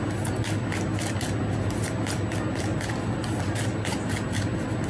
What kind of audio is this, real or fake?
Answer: real